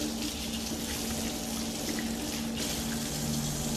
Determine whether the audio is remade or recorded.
recorded